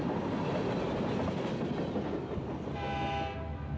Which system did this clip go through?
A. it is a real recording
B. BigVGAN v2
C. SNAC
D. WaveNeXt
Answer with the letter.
A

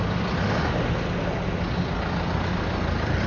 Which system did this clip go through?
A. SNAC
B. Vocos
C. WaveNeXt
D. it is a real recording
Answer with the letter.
D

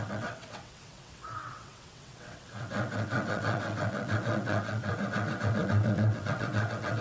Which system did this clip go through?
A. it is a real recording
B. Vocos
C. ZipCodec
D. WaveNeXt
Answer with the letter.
D